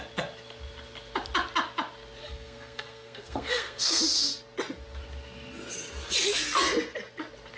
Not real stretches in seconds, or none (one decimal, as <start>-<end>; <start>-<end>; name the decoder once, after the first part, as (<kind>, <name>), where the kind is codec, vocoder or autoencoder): 2.2-4.0 (codec, SNAC)